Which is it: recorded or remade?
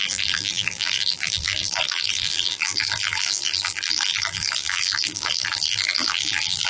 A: remade